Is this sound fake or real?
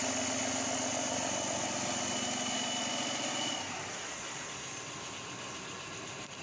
real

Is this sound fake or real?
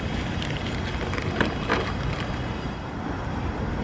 real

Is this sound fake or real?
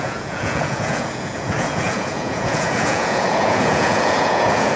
fake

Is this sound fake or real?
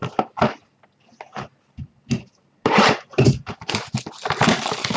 real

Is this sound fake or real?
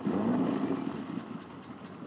real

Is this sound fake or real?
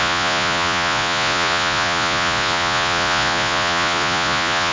fake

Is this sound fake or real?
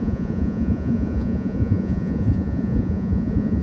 fake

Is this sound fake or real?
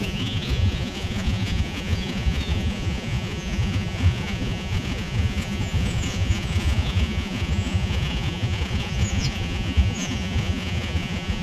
fake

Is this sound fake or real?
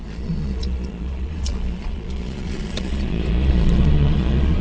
fake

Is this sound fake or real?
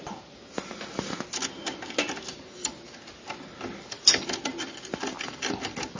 real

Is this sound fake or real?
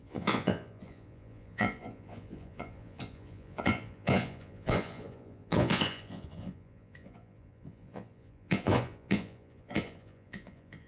fake